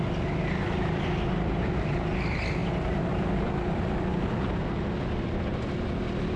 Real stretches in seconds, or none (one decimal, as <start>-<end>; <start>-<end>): 0.0-6.4